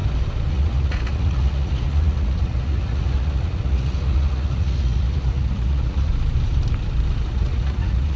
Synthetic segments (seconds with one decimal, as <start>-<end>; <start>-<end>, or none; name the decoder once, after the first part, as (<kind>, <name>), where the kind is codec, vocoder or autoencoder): 0.5-6.1 (vocoder, Vocos); 7.3-8.2

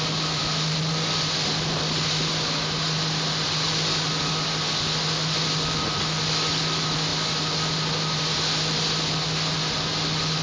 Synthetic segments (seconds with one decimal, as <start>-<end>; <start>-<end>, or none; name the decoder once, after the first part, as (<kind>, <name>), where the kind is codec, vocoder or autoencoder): none

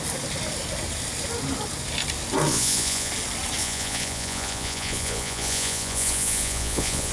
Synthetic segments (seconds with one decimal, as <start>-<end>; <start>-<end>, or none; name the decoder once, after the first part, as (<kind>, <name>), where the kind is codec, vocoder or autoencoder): 2.5-3.1 (vocoder, Vocos); 3.6-7.1